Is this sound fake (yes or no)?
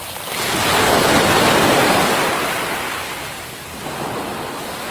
no